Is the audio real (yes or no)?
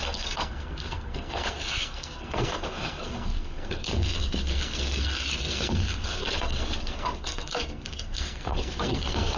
no